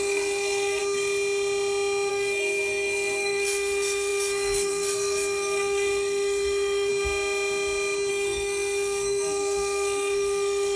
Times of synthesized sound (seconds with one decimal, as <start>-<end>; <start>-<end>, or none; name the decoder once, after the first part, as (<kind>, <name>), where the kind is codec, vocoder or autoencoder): 0.0-0.8 (codec, SNAC); 2.1-6.9; 8.1-10.8